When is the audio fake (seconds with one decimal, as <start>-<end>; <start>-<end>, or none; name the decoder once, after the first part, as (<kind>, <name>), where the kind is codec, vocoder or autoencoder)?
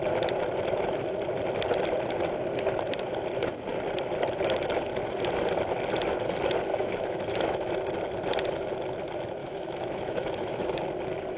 6.7-7.7 (autoencoder, DAC-VAE); 9.4-10.8